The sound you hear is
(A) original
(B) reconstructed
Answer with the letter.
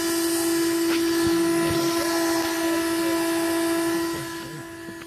A